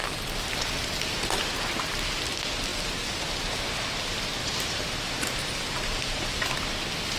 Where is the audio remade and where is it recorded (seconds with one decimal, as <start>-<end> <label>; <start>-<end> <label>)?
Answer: 0.0-0.6 remade; 0.6-4.4 recorded; 4.4-6.4 remade; 6.4-7.2 recorded